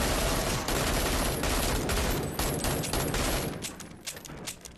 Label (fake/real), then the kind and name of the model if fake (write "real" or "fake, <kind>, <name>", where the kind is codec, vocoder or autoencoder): real